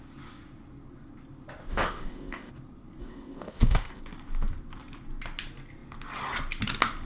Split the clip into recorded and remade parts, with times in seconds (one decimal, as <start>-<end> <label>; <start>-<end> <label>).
0.0-1.7 recorded; 1.7-2.5 remade; 2.5-3.0 recorded; 3.0-4.0 remade; 4.0-7.1 recorded